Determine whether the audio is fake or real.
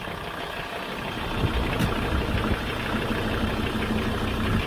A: real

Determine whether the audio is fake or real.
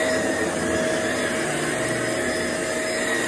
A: real